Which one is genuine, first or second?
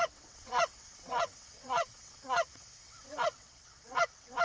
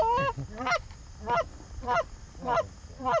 second